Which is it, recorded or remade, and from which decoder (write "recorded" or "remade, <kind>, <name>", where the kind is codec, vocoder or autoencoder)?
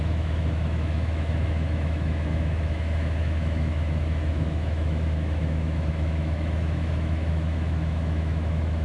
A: remade, autoencoder, DAC-VAE